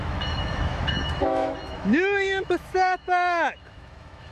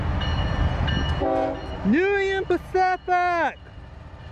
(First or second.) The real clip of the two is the second